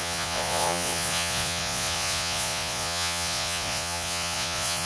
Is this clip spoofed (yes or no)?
yes